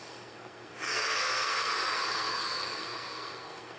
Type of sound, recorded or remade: remade